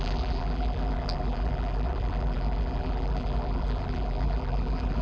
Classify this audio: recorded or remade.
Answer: remade